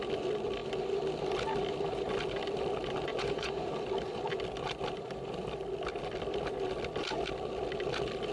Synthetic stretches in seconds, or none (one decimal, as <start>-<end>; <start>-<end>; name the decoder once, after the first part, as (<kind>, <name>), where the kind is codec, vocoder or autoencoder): 3.1-3.7 (vocoder, Vocos)